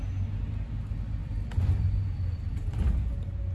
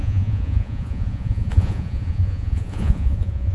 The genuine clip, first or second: first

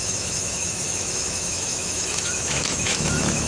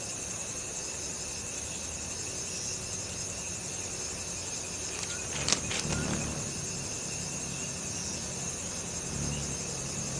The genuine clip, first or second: second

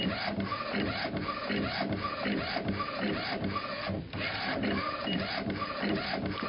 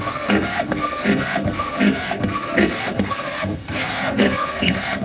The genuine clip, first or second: first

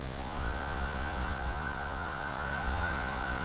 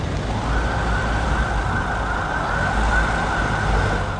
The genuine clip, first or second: second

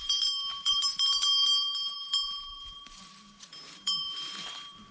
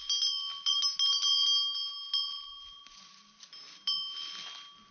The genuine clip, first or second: second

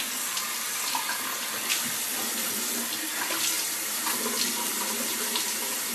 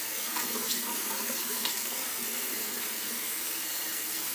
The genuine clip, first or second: first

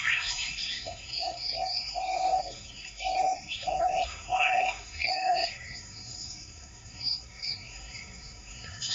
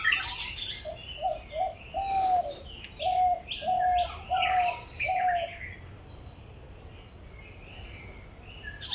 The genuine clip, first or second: second